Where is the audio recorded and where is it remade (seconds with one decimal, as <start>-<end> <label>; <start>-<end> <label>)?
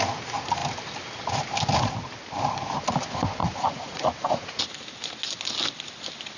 0.0-3.4 recorded; 3.4-4.6 remade; 4.6-6.4 recorded